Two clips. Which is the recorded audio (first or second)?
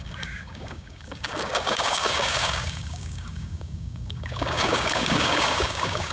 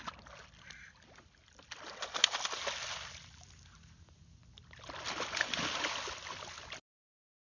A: second